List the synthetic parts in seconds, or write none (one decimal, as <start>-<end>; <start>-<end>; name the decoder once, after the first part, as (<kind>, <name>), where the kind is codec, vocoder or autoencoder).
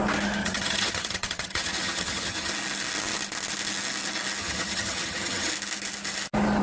0.4-2.5 (vocoder, HiFi-GAN); 4.4-5.5